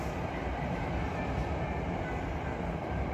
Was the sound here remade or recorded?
recorded